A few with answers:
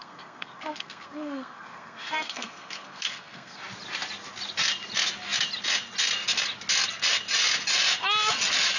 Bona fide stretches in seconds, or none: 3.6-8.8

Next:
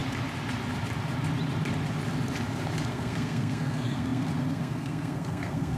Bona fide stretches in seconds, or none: 0.0-2.9

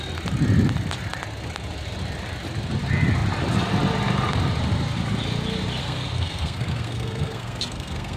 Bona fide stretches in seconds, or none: 0.0-5.8

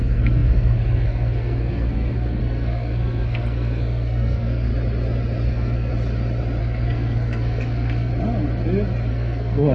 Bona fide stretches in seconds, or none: 4.7-5.5; 5.9-6.6; 8.1-9.1

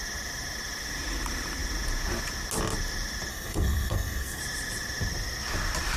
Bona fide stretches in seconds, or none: 0.0-3.3; 4.4-6.0